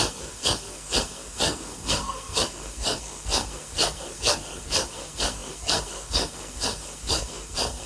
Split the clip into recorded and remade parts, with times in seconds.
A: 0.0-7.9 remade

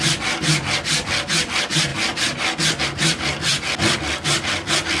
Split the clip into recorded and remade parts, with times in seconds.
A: 0.0-5.0 recorded

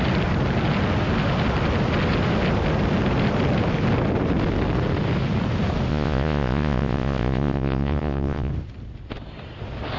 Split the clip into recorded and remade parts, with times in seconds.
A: 0.0-5.9 recorded; 5.9-8.5 remade; 8.5-10.0 recorded